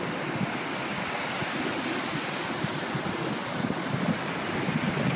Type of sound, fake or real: real